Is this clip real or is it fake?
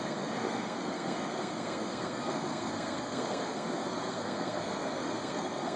fake